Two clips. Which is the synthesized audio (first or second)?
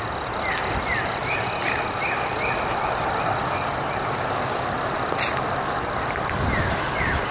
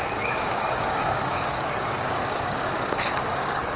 second